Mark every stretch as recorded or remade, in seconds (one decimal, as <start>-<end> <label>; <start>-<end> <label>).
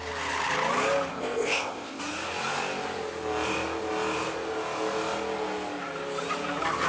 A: 0.0-1.1 recorded; 1.1-2.0 remade; 2.0-6.9 recorded